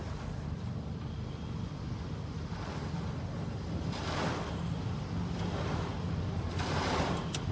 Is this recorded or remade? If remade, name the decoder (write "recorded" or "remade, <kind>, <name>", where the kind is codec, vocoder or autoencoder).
recorded